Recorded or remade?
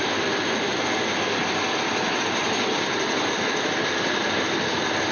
recorded